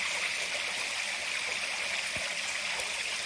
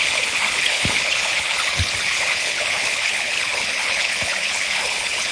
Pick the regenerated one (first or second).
second